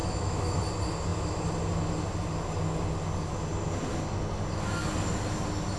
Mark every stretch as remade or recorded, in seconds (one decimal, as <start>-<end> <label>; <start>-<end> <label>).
0.0-0.6 remade; 0.6-5.8 recorded